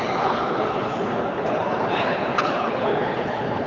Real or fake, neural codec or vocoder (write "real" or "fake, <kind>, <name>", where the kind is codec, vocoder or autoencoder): fake, codec, HILCodec